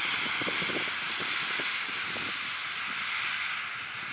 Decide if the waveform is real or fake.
real